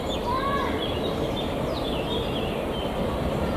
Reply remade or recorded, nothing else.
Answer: recorded